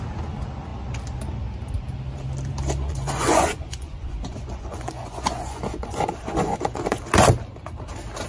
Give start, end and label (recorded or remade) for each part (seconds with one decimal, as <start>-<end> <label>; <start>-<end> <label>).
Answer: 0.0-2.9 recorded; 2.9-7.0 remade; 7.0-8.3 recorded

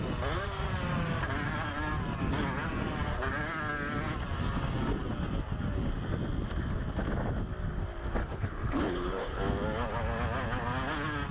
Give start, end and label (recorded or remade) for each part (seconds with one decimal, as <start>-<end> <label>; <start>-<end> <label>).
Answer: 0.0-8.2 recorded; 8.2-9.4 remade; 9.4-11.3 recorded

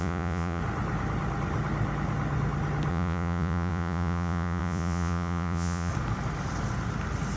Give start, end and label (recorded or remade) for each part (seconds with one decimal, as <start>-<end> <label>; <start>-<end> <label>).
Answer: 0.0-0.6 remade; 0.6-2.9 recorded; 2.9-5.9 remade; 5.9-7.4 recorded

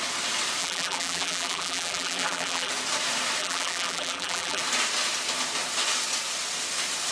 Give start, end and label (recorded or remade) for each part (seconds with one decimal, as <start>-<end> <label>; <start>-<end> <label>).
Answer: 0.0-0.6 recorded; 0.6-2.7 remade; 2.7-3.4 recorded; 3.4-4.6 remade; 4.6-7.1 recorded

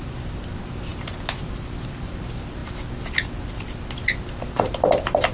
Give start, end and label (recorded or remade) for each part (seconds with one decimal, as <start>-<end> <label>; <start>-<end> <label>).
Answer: 0.0-5.3 recorded

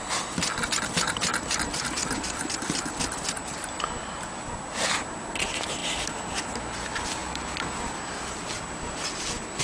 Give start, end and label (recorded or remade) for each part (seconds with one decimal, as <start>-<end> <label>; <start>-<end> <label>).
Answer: 0.0-1.3 recorded; 1.3-4.0 remade; 4.0-7.2 recorded; 7.2-9.6 remade

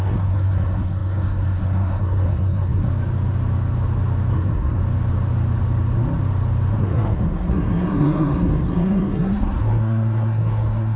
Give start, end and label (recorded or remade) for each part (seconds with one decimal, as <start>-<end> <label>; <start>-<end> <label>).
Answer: 0.0-2.9 remade; 2.9-4.3 recorded; 4.3-4.8 remade; 4.8-6.8 recorded; 6.8-11.0 remade

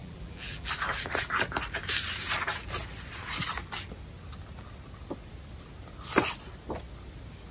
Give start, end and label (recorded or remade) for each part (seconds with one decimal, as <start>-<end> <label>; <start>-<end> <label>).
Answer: 0.0-0.7 remade; 0.7-7.5 recorded